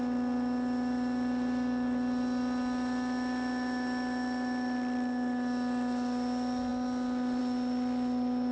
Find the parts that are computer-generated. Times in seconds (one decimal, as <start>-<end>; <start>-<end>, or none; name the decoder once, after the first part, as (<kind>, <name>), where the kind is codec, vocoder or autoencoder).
none